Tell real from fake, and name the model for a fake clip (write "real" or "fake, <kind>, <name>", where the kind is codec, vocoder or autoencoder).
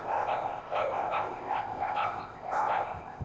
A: fake, codec, ZipCodec